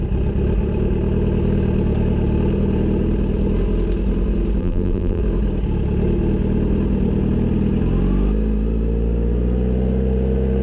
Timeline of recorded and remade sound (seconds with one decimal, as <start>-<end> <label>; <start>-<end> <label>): 0.0-4.6 recorded; 4.6-5.2 remade; 5.2-10.6 recorded